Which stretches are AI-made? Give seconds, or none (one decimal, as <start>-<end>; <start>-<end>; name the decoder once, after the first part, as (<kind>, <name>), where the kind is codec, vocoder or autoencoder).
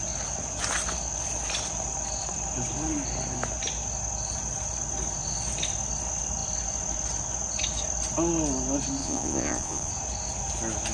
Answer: 9.0-9.9 (vocoder, Vocos)